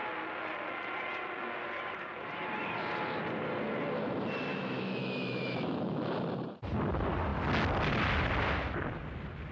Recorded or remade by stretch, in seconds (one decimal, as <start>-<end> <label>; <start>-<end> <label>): 0.0-4.5 recorded; 4.5-6.0 remade; 6.0-9.5 recorded